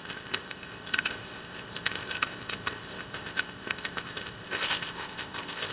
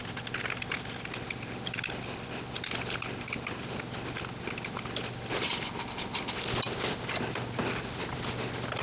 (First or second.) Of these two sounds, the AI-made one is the first